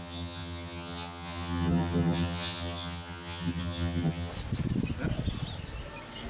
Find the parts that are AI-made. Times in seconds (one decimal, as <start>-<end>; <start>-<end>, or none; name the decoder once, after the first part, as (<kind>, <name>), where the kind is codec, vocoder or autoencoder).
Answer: 0.0-4.3 (vocoder, HiFi-GAN)